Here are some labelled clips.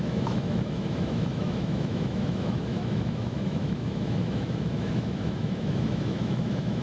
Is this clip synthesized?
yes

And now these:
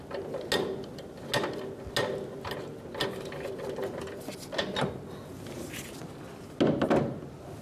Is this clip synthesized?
no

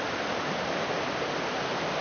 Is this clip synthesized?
no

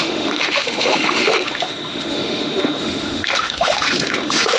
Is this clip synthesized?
yes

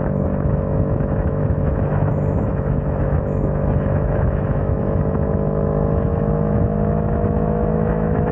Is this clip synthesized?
yes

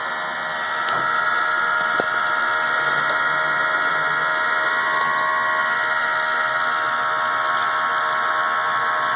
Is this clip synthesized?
no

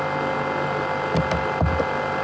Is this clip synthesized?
no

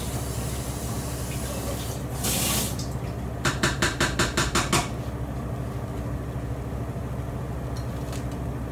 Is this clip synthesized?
no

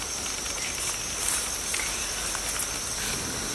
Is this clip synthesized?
no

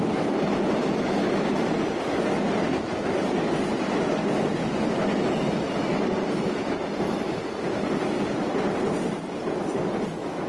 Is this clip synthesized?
no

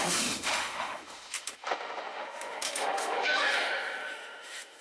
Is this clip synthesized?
yes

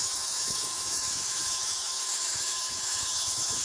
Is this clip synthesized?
yes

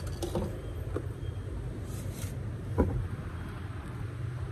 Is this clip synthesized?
no